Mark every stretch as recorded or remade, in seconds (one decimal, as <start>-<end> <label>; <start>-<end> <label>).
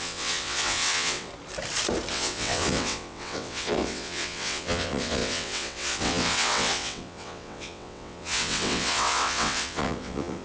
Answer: 0.0-1.3 remade; 1.3-2.1 recorded; 2.1-10.4 remade